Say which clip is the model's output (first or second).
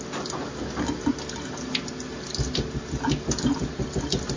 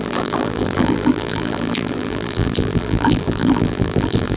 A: second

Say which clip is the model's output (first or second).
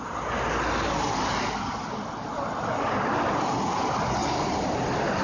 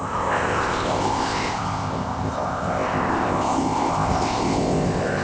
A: second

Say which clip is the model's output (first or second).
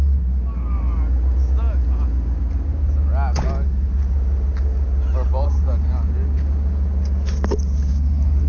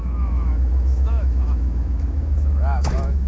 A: second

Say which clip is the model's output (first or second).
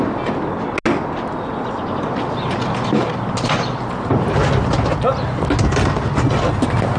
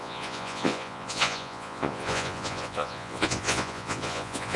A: second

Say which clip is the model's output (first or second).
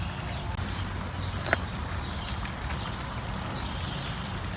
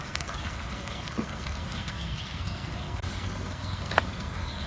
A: second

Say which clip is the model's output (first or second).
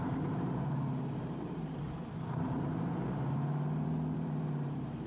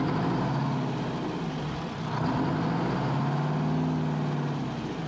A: first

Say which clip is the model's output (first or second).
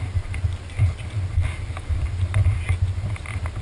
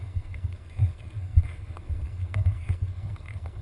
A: second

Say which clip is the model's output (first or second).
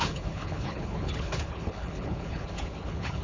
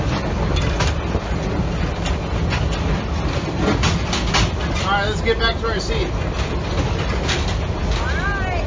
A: first